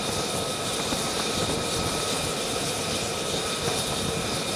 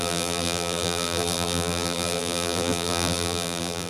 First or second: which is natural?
first